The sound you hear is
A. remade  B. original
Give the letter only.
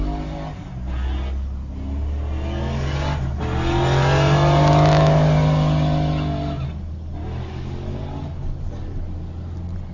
B